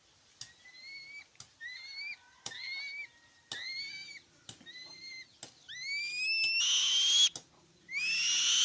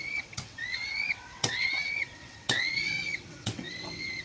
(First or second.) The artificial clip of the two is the second